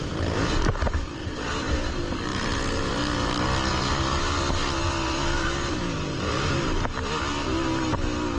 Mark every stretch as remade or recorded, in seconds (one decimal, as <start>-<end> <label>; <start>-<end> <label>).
0.0-1.2 recorded; 1.2-1.9 remade; 1.9-2.3 recorded; 2.3-2.9 remade; 2.9-8.4 recorded